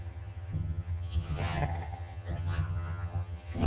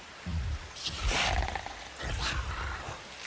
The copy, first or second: first